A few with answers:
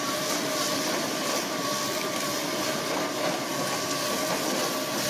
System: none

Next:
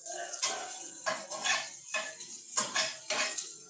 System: none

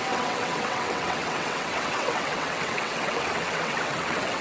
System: vocoder, WaveNeXt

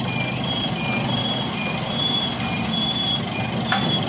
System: none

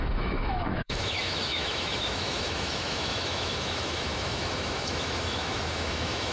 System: autoencoder, DAC-VAE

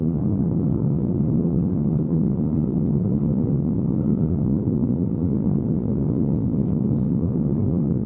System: vocoder, Vocos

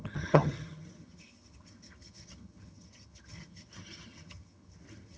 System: vocoder, HiFi-GAN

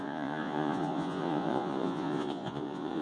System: vocoder, Vocos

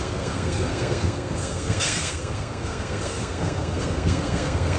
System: codec, SNAC